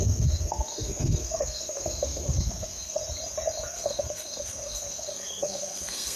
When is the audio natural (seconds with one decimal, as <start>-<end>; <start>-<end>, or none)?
3.0-3.7